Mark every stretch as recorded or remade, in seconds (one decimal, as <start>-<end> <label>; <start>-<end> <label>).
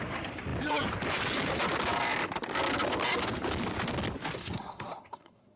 0.0-4.4 recorded; 4.4-5.6 remade